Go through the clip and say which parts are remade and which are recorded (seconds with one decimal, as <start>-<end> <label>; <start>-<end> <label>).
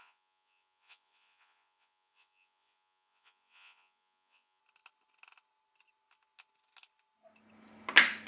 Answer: 0.0-4.6 remade; 4.6-8.3 recorded